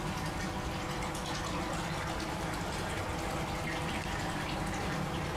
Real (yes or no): yes